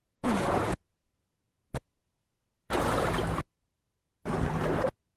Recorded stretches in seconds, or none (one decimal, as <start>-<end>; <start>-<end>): 3.1-5.2